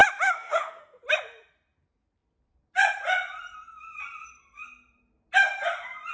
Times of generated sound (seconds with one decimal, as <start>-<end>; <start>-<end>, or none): 0.0-1.0